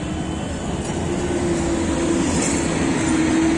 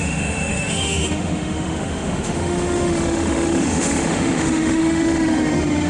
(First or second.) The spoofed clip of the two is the second